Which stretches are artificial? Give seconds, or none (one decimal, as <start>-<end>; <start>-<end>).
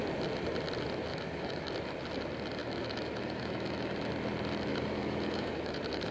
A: 1.1-1.7; 2.6-4.1; 4.7-6.1